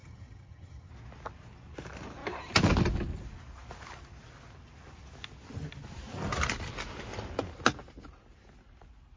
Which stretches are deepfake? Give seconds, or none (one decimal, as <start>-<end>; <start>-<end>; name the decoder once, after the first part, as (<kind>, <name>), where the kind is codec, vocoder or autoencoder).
0.0-0.9 (vocoder, HiFi-GAN)